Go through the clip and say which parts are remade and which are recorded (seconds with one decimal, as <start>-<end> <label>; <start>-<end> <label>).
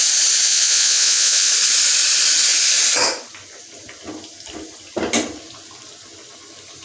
0.0-0.5 recorded; 0.5-1.5 remade; 1.5-6.8 recorded